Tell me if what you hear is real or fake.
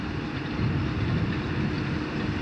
real